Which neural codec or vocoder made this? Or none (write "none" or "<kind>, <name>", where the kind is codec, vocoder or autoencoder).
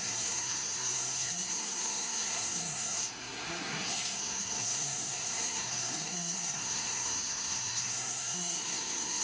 codec, SNAC